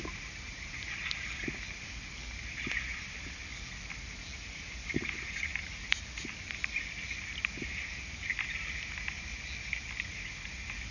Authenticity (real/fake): real